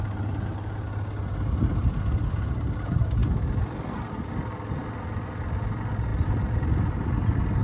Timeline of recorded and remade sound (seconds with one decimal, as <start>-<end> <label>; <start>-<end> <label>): 0.0-7.6 recorded